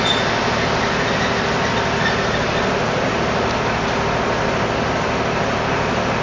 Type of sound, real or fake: real